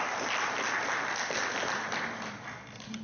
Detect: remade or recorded recorded